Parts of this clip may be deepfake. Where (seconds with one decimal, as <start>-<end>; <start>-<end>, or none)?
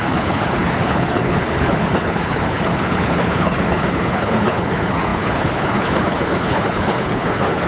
0.0-7.7